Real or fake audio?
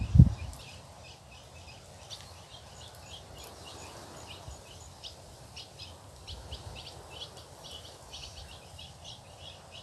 real